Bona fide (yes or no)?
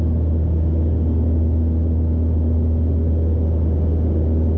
yes